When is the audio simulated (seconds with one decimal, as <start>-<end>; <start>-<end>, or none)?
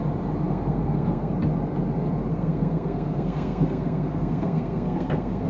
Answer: 0.5-1.3; 2.3-5.5